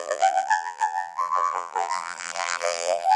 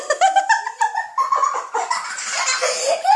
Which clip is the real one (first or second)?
second